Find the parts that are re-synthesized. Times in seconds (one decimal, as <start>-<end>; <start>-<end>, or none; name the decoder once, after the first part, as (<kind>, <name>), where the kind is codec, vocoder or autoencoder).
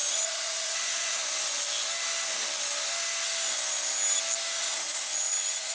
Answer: 0.0-1.2 (vocoder, Vocos); 4.6-5.7